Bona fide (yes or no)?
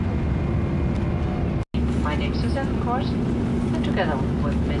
yes